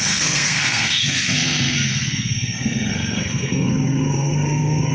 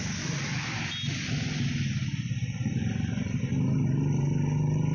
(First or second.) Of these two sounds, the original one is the second